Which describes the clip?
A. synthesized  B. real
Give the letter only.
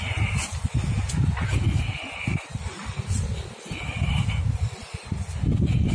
B